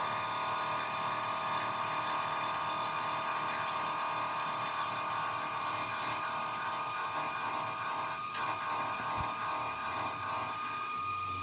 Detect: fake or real real